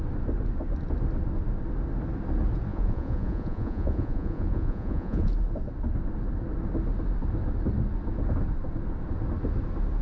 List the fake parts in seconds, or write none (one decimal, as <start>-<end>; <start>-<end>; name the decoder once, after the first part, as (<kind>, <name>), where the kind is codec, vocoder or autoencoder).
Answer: 2.7-5.3 (vocoder, Vocos)